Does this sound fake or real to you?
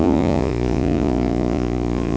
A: fake